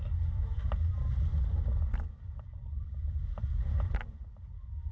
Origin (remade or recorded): recorded